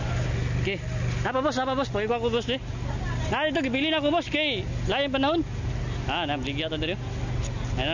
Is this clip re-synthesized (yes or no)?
no